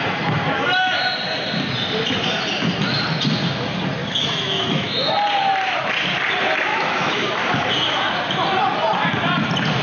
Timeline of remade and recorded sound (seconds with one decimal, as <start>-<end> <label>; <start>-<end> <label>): 0.0-4.0 recorded; 4.0-5.1 remade; 5.1-6.7 recorded; 6.7-7.3 remade; 7.3-9.8 recorded